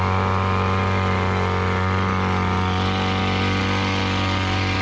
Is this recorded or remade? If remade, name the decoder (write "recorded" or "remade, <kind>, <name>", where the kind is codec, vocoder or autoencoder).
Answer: recorded